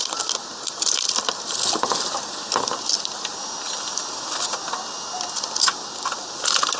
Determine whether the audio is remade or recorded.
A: recorded